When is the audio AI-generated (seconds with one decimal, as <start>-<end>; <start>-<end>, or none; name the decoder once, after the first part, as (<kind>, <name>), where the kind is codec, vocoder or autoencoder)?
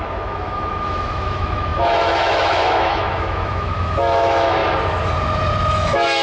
0.0-4.6 (autoencoder, DAC-VAE); 5.7-6.2